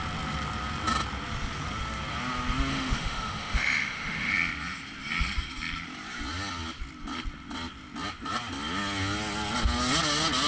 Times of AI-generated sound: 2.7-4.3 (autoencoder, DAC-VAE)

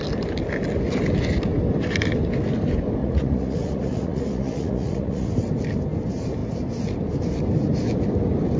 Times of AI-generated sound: 3.0-5.3 (vocoder, Vocos)

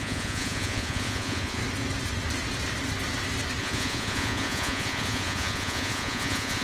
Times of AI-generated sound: 0.0-1.6 (vocoder, Vocos); 3.6-6.6

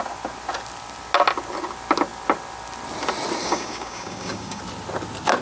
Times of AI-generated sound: 3.4-4.6 (codec, DAC)

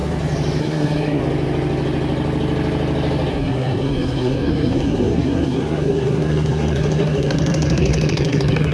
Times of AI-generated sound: 0.6-1.2 (codec, SNAC); 3.3-8.7

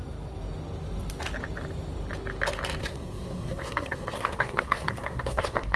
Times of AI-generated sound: 2.8-5.8 (codec, SNAC)

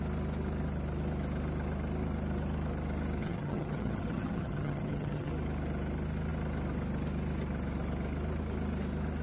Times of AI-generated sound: 3.2-5.3 (vocoder, HiFi-GAN)